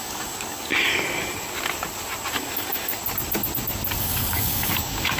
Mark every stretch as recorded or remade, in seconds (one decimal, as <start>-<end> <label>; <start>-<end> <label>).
0.0-0.7 remade; 0.7-2.3 recorded; 2.3-3.0 remade; 3.0-4.0 recorded; 4.0-5.2 remade